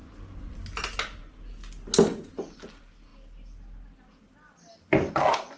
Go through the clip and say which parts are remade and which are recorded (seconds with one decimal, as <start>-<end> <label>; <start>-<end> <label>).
0.0-5.6 recorded